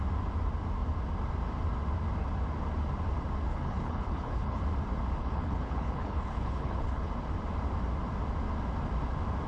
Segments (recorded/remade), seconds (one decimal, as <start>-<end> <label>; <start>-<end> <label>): 0.0-3.5 recorded; 3.5-4.6 remade; 4.6-5.2 recorded; 5.2-7.1 remade; 7.1-9.5 recorded